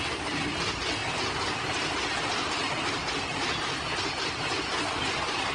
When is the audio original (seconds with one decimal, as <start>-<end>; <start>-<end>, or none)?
0.0-5.5